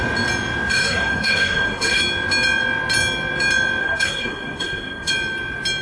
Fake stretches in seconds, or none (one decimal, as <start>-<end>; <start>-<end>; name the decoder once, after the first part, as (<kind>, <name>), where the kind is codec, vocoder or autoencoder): 0.7-2.0 (codec, SNAC); 3.8-5.1